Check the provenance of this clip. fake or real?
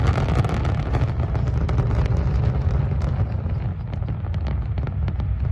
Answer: real